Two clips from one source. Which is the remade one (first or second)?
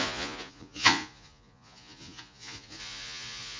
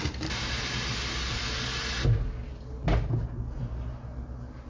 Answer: first